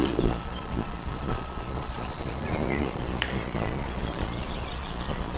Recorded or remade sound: remade